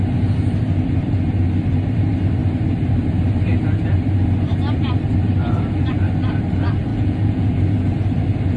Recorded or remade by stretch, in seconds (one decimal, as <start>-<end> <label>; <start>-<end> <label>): 0.0-6.9 recorded; 6.9-7.5 remade; 7.5-8.6 recorded